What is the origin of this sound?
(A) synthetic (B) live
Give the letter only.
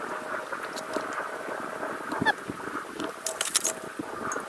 B